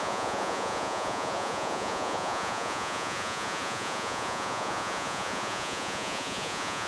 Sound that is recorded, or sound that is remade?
remade